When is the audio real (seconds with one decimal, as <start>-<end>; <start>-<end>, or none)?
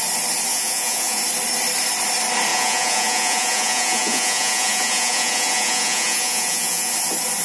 0.0-0.5; 1.2-2.5; 6.9-7.4